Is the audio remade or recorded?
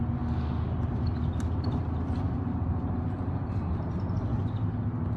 recorded